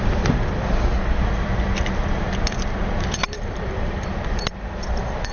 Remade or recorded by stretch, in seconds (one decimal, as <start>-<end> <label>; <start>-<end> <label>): 0.0-2.3 remade; 2.3-2.8 recorded; 2.8-5.3 remade